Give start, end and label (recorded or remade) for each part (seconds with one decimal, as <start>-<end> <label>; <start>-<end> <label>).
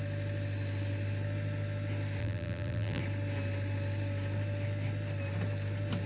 0.0-2.2 recorded; 2.2-3.0 remade; 3.0-6.1 recorded